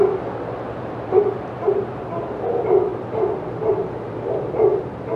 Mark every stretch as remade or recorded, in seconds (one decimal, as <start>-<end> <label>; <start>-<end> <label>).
0.0-5.2 recorded

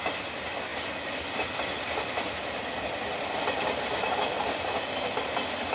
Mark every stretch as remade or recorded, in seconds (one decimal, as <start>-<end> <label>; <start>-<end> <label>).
0.0-5.7 recorded

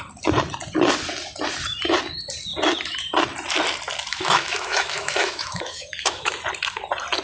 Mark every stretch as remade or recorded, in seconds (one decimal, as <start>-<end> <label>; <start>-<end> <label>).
0.0-4.1 recorded; 4.1-6.3 remade; 6.3-7.2 recorded

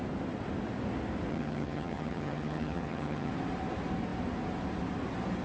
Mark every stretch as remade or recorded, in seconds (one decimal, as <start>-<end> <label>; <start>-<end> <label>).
0.0-1.3 recorded; 1.3-3.3 remade; 3.3-5.4 recorded

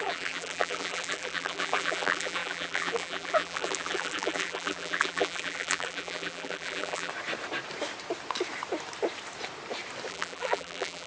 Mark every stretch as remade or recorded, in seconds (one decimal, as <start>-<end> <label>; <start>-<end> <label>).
0.0-7.1 remade; 7.1-10.1 recorded; 10.1-11.1 remade

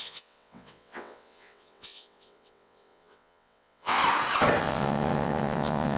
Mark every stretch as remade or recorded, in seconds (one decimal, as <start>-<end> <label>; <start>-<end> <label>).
0.0-4.0 remade; 4.0-4.6 recorded; 4.6-6.0 remade

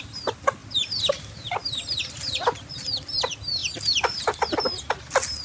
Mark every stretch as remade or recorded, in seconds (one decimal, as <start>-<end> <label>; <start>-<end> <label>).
0.0-5.4 recorded